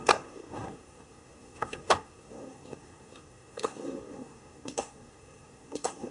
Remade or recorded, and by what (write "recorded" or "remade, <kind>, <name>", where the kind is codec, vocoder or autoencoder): remade, codec, SNAC